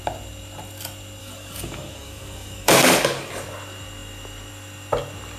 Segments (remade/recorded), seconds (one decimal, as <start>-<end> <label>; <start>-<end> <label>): 0.0-1.2 recorded; 1.2-3.3 remade; 3.3-5.4 recorded